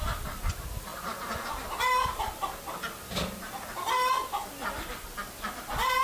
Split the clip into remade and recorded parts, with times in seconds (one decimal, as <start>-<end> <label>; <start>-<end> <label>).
0.0-6.0 recorded